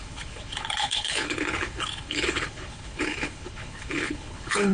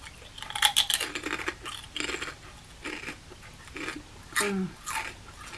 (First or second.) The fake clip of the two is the first